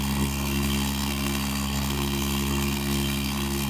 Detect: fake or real fake